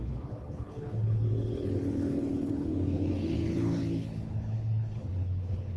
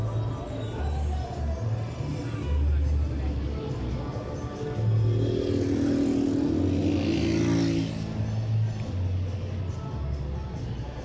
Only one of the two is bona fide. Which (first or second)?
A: second